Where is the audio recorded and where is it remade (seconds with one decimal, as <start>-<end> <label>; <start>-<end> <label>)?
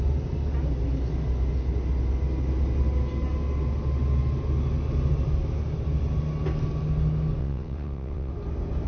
0.0-7.4 recorded; 7.4-8.3 remade; 8.3-8.9 recorded